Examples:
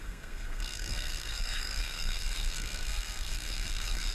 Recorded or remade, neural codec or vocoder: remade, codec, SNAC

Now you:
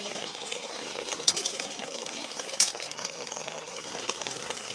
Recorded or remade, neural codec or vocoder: remade, codec, SNAC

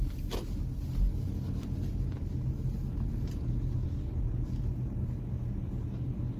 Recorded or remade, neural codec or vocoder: recorded